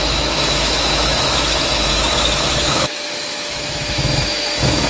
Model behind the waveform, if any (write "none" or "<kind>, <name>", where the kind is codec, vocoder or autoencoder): autoencoder, DAC-VAE